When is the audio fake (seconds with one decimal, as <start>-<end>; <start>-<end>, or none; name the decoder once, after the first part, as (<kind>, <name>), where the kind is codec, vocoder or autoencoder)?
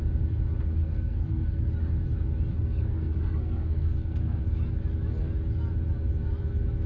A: 0.8-1.7 (codec, SNAC); 2.5-4.4